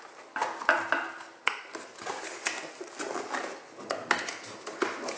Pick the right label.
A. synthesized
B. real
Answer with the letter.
B